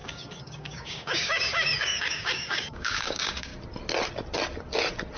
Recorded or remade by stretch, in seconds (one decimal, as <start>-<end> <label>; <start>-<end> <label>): 0.0-3.5 remade; 3.5-5.2 recorded